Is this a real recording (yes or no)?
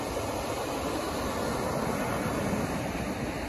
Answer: yes